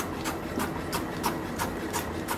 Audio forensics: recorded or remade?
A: recorded